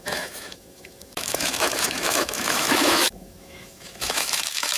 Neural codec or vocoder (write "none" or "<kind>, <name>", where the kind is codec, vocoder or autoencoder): autoencoder, DAC-VAE